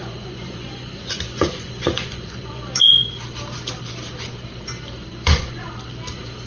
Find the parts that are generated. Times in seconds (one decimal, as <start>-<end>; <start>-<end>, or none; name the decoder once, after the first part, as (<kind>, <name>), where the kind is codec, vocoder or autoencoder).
0.0-2.9 (vocoder, Vocos); 5.1-5.7